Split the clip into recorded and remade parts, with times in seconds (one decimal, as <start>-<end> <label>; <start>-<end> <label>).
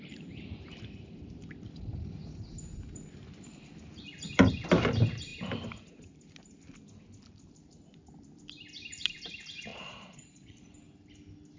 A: 0.0-9.7 recorded; 9.7-10.7 remade; 10.7-11.6 recorded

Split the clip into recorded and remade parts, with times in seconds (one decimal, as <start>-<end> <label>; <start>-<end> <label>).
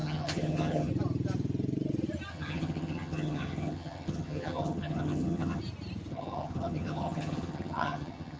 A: 0.0-0.9 remade; 0.9-2.3 recorded; 2.3-5.6 remade; 5.6-6.1 recorded; 6.1-8.4 remade